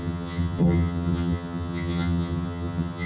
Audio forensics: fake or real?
fake